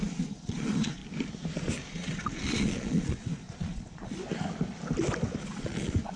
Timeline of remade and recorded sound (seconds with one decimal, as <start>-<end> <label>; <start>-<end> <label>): 0.0-1.0 remade; 1.0-1.9 recorded; 1.9-4.2 remade; 4.2-5.4 recorded; 5.4-6.2 remade

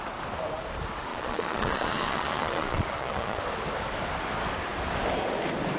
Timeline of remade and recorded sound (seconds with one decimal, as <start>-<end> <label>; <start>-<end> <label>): 0.0-1.1 recorded; 1.1-3.4 remade; 3.4-5.8 recorded

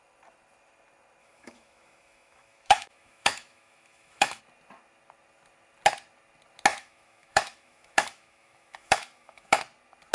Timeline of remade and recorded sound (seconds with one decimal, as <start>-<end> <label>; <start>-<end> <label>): 0.0-1.2 recorded; 1.2-4.4 remade; 4.4-6.7 recorded; 6.7-9.6 remade; 9.6-10.1 recorded

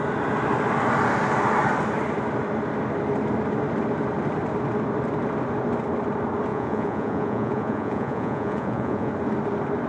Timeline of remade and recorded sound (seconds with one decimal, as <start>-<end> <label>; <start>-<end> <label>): 0.0-6.5 recorded; 6.5-9.1 remade; 9.1-9.9 recorded

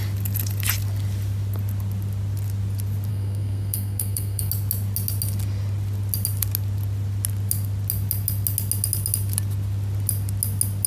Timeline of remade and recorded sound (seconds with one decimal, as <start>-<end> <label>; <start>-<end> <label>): 0.0-3.1 recorded; 3.1-4.5 remade; 4.5-10.9 recorded

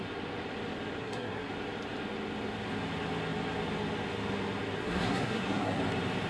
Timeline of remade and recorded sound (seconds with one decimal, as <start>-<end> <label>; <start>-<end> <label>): 0.0-1.0 recorded; 1.0-1.5 remade; 1.5-4.8 recorded; 4.8-5.8 remade; 5.8-6.3 recorded